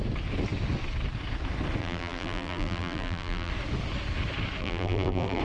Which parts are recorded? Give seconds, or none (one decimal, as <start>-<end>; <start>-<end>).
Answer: 0.0-1.8; 3.5-4.6